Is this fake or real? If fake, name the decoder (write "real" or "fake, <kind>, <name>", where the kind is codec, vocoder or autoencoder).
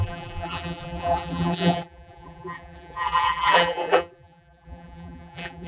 fake, vocoder, BigVGAN v2